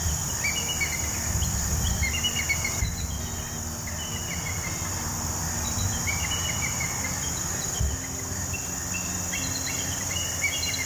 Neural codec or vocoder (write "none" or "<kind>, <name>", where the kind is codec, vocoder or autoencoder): none